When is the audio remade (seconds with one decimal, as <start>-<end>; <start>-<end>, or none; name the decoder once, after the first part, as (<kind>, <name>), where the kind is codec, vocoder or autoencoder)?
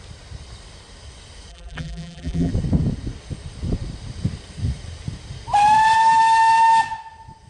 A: 1.5-2.5 (vocoder, BigVGAN v2)